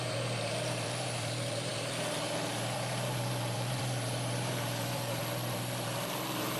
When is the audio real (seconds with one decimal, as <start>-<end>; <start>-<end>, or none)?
none